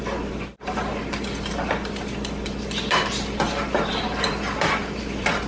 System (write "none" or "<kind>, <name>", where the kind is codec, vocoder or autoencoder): vocoder, BigVGAN v2